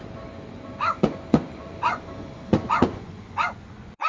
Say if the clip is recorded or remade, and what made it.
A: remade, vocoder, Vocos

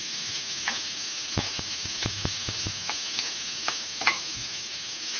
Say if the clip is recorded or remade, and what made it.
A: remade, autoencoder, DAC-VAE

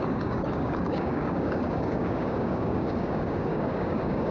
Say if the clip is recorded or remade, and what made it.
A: remade, codec, DAC